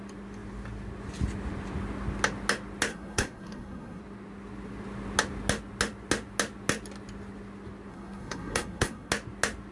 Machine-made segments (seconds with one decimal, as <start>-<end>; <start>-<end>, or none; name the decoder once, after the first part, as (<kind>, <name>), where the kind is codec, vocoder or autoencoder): 2.9-4.0 (codec, SNAC); 7.9-9.1